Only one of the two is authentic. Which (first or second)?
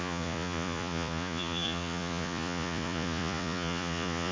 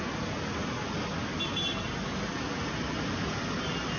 second